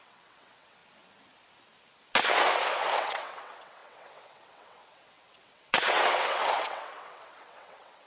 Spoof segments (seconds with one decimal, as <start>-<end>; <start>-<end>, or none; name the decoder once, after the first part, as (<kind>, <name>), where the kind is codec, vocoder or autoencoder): 0.0-0.8 (vocoder, WaveNeXt); 3.0-8.1